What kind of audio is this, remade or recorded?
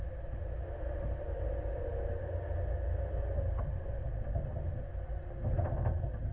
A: recorded